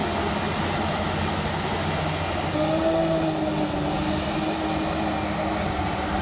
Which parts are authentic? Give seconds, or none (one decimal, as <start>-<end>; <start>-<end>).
0.0-6.2